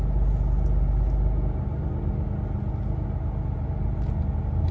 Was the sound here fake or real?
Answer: real